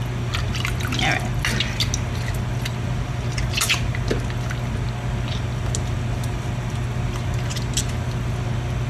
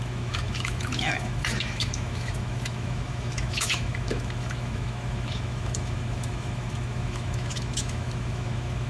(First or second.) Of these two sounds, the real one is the first